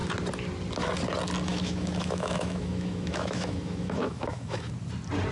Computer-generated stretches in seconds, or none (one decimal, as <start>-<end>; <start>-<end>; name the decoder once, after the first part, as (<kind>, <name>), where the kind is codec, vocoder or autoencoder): 1.5-4.7 (autoencoder, DAC-VAE)